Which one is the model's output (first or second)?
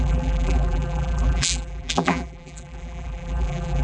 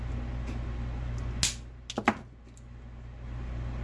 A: first